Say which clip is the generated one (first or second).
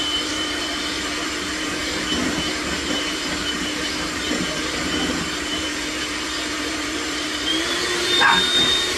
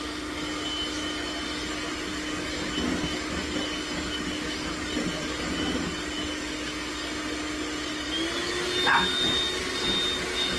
first